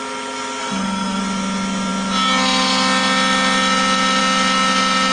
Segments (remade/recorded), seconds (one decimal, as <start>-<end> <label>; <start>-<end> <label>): 0.0-0.6 recorded; 0.6-1.2 remade; 1.2-5.1 recorded